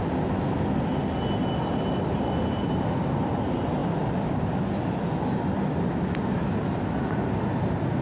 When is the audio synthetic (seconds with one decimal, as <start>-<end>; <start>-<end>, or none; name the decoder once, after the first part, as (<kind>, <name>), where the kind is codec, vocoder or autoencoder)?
1.7-3.1 (vocoder, BigVGAN v2)